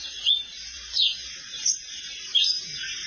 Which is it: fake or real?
fake